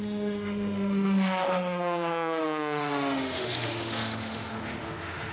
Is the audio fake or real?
fake